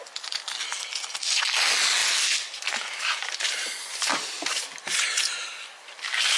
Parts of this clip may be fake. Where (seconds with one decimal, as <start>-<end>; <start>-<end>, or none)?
none